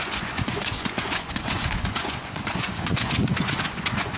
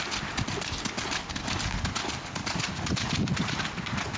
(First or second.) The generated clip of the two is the first